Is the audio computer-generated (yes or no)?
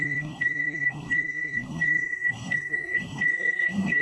yes